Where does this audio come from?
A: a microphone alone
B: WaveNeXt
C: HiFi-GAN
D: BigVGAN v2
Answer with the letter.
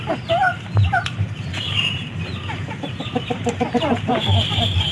D